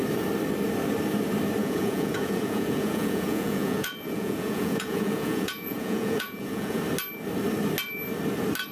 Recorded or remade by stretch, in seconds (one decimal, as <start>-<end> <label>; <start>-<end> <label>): 0.0-1.6 recorded; 1.6-6.8 remade; 6.8-8.7 recorded